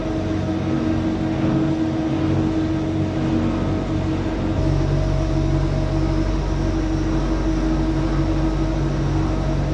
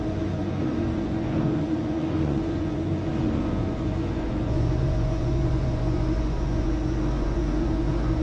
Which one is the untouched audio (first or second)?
first